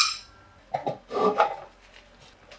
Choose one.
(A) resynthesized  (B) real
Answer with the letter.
B